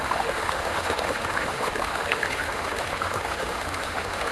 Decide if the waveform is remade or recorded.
remade